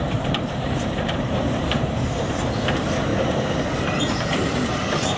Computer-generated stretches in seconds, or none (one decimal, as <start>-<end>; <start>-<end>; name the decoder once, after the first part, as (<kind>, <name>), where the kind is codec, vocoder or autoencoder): 0.0-3.1 (vocoder, BigVGAN v2); 4.0-5.2

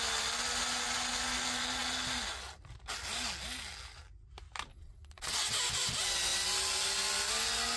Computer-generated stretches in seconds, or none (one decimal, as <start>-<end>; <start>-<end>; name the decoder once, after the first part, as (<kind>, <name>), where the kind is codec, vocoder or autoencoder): 4.7-5.6 (vocoder, WaveNeXt)